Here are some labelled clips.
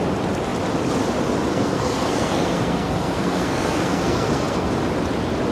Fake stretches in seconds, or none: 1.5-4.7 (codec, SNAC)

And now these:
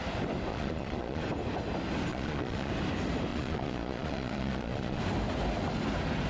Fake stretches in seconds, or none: 0.5-1.2 (vocoder, Vocos); 2.1-2.7; 3.3-5.0

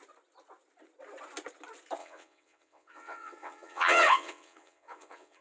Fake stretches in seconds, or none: 2.0-5.4 (vocoder, WaveNeXt)

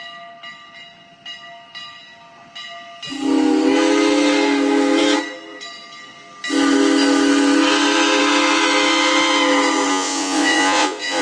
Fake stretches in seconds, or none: 9.9-11.2 (vocoder, Vocos)

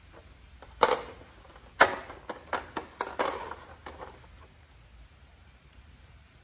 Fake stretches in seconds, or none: 0.0-1.1 (vocoder, BigVGAN v2); 3.3-3.8; 5.1-6.4

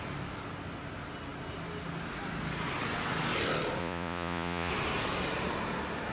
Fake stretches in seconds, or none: 3.8-4.7 (vocoder, Vocos)

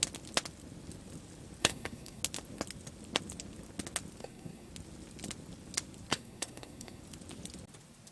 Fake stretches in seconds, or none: 1.6-2.2 (codec, SNAC); 4.2-4.7; 6.1-7.0